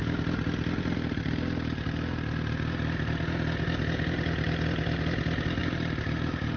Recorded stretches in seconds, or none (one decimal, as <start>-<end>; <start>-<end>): 0.0-5.6